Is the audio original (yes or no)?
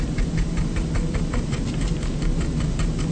yes